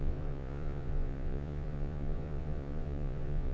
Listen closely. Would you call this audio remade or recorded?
remade